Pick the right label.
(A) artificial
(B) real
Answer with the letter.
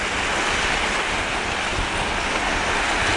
B